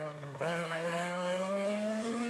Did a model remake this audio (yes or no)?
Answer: yes